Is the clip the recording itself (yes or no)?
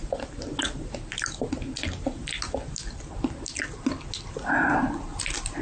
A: yes